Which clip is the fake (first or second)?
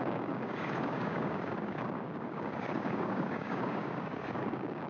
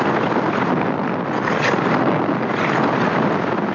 first